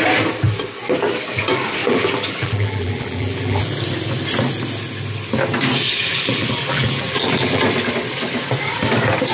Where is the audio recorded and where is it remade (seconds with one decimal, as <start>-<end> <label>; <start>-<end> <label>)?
0.0-1.8 recorded; 1.8-3.8 remade; 3.8-6.1 recorded; 6.1-7.6 remade; 7.6-9.3 recorded

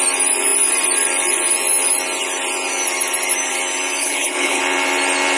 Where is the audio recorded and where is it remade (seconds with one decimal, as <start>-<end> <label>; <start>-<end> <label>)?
0.0-4.0 recorded; 4.0-4.6 remade; 4.6-5.4 recorded